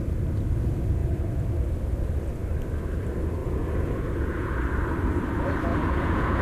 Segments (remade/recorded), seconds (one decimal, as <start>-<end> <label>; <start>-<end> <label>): 0.0-3.4 recorded; 3.4-4.6 remade; 4.6-5.7 recorded; 5.7-6.4 remade